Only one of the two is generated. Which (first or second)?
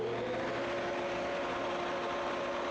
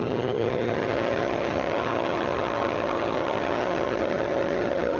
second